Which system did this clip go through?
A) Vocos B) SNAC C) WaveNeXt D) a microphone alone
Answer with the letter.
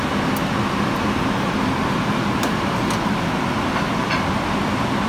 D